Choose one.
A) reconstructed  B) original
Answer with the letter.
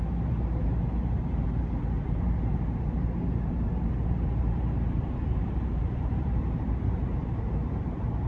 A